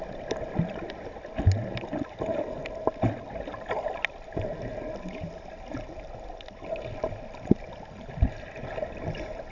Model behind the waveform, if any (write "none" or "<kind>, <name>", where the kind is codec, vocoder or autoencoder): vocoder, BigVGAN v2